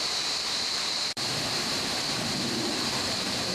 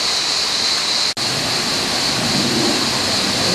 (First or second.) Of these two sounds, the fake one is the first